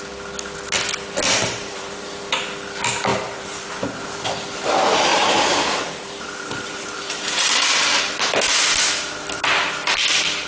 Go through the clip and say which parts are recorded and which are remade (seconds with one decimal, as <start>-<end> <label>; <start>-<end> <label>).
0.0-1.4 recorded; 1.4-2.2 remade; 2.2-3.1 recorded; 3.1-4.0 remade; 4.0-5.1 recorded; 5.1-7.8 remade; 7.8-10.5 recorded